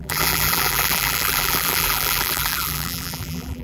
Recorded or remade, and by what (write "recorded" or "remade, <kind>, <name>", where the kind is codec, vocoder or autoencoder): remade, vocoder, BigVGAN v2